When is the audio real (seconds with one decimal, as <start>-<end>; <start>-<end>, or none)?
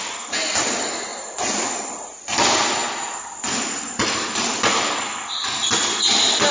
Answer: 0.0-6.5